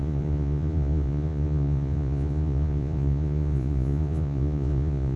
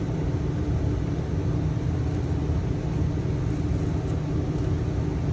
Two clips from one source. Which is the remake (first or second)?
first